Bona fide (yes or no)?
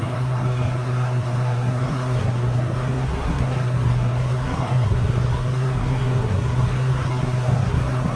no